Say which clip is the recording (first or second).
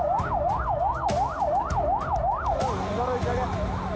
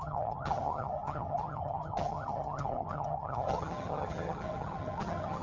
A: first